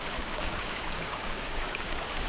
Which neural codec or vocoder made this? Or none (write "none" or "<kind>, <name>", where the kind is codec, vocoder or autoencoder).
codec, DAC